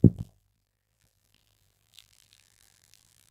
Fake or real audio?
fake